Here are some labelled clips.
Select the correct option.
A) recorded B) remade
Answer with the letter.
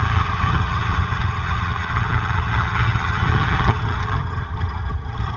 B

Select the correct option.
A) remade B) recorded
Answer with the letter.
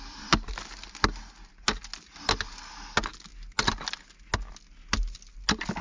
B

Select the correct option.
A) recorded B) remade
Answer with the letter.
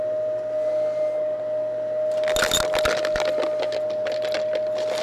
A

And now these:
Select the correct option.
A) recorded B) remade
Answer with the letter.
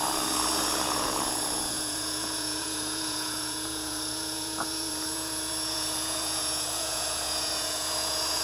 B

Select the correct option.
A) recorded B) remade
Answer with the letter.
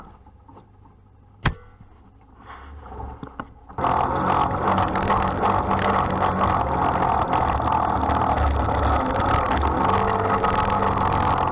A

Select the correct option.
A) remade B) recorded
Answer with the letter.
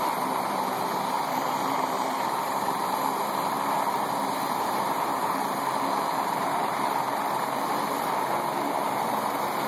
A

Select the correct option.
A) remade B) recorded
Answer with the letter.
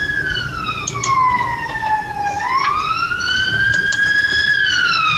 B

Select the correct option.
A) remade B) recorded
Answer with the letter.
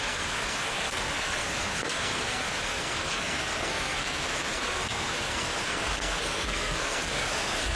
A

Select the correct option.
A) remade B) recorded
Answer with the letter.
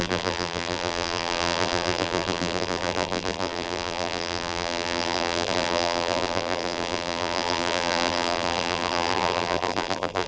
A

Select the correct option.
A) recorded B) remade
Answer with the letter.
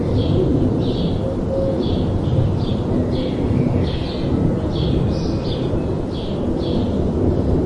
A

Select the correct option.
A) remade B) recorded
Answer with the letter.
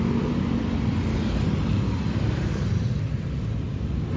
B